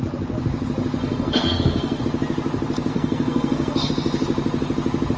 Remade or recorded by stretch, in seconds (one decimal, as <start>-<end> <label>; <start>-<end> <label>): 0.0-1.0 recorded; 1.0-2.0 remade; 2.0-2.9 recorded; 2.9-3.9 remade; 3.9-5.2 recorded